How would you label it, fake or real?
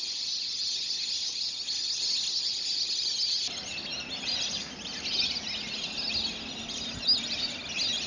real